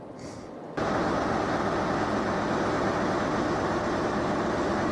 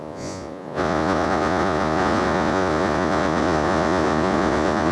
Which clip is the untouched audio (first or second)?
first